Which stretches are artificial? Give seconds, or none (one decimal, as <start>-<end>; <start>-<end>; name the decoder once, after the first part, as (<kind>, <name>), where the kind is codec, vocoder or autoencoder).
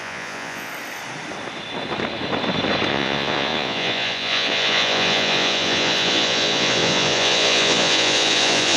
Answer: 0.0-0.7 (vocoder, Vocos); 2.9-8.8